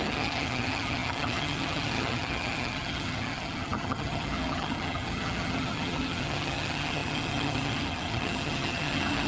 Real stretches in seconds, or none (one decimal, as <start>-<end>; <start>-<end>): none